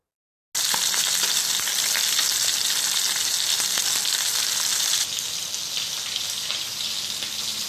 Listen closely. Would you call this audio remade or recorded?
recorded